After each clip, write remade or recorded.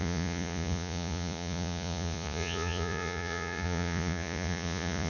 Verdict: remade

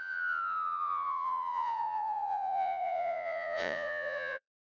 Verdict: remade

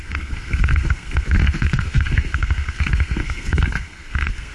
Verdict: remade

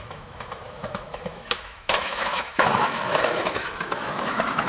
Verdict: remade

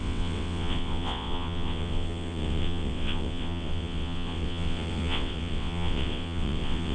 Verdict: remade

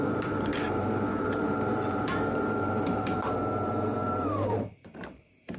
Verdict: remade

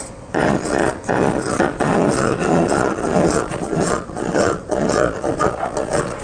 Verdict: remade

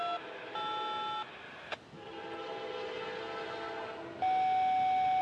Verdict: recorded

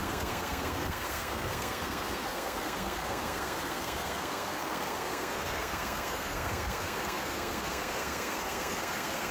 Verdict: remade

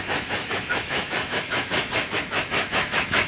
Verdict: remade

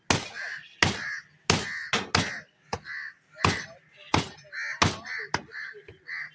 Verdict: recorded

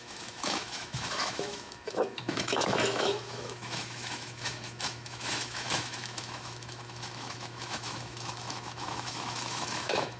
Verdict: remade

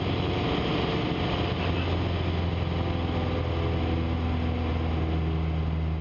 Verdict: recorded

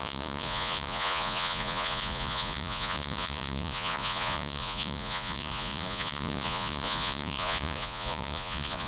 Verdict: remade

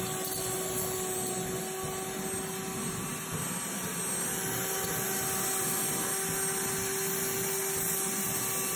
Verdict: recorded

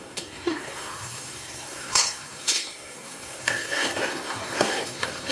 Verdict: remade